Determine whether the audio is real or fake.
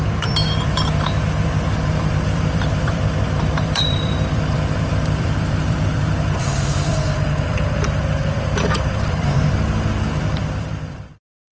fake